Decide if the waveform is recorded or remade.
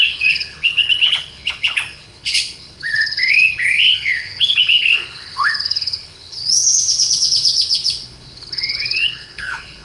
remade